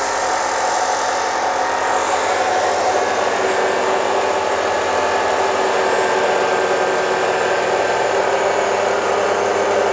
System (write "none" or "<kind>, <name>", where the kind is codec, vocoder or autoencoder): none